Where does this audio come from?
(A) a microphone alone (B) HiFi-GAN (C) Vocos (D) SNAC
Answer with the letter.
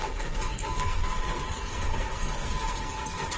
D